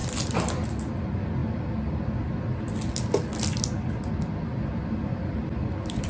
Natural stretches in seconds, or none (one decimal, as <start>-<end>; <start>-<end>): 0.0-6.1